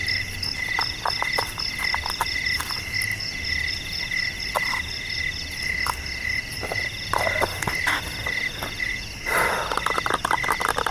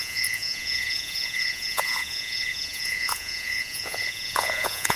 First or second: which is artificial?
second